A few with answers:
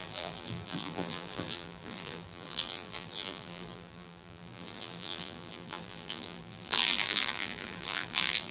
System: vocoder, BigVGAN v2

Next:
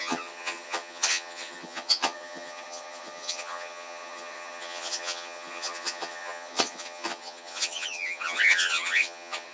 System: vocoder, HiFi-GAN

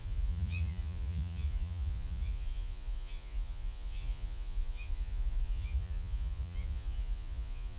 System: vocoder, Vocos